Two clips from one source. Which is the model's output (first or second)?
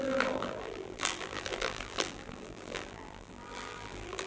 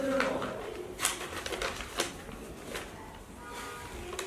first